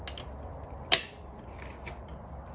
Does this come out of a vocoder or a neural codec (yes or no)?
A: no